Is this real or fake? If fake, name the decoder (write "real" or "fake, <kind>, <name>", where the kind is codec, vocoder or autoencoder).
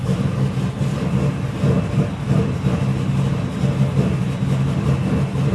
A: real